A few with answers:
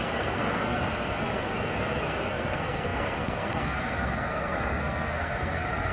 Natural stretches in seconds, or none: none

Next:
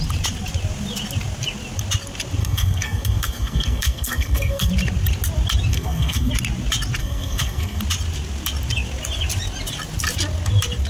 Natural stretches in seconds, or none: 0.0-2.4; 4.7-5.7; 6.3-7.0; 7.8-10.9

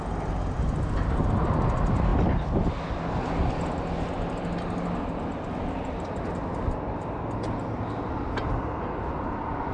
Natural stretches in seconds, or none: 0.0-9.7

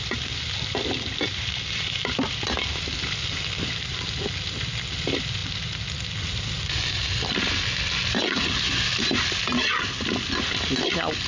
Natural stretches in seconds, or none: 0.0-11.3

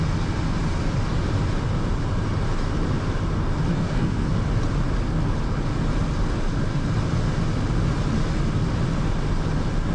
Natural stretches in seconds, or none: 0.0-3.7; 4.3-9.9

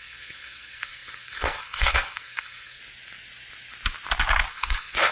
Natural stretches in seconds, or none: 2.8-4.5

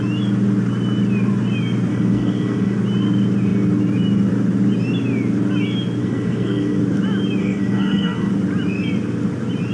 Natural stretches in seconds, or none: 0.0-1.9; 2.8-6.0; 6.8-7.4; 8.3-9.7